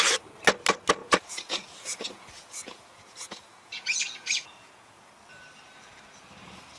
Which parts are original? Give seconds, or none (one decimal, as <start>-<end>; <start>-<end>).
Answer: 0.0-1.0; 5.1-6.8